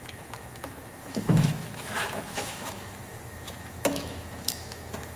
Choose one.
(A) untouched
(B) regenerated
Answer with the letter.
B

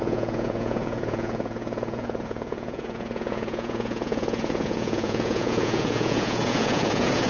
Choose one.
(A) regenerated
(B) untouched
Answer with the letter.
A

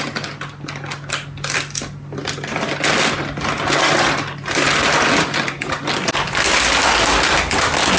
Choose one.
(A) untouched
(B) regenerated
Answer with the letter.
A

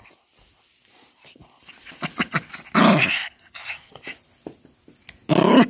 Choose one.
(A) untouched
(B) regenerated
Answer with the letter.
A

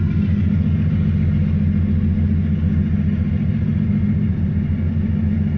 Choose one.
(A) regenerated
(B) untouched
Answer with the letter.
B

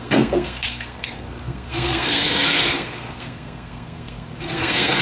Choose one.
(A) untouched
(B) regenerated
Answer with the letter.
B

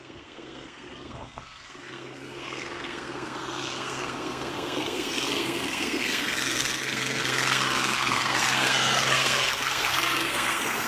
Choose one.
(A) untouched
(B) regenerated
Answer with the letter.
B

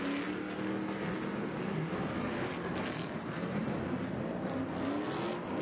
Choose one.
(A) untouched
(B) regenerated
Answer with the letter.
A